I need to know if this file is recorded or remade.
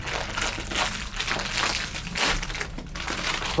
recorded